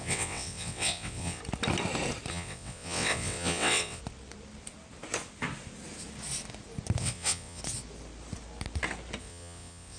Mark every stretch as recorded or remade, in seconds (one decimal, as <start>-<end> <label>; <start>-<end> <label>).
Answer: 0.0-1.4 remade; 1.4-2.3 recorded; 2.3-4.0 remade; 4.0-7.0 recorded; 7.0-7.6 remade; 7.6-9.2 recorded; 9.2-10.0 remade

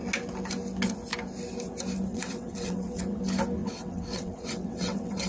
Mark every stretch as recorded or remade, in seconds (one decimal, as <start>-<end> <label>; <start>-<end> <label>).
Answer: 0.0-2.1 recorded; 2.1-3.2 remade; 3.2-3.6 recorded; 3.6-5.3 remade